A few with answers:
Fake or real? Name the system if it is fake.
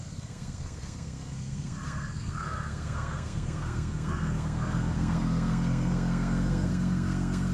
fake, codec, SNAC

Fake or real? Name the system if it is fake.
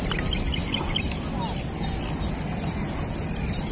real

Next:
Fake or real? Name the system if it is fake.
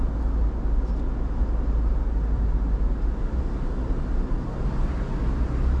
real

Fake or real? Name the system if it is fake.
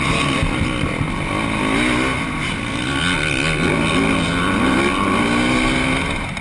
real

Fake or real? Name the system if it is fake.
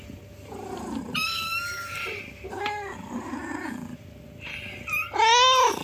real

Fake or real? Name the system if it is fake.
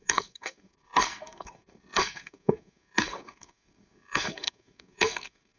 fake, codec, SNAC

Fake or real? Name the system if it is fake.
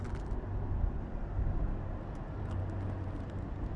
real